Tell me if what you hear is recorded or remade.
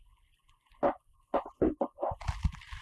remade